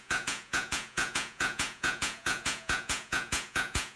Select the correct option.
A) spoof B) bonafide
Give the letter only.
A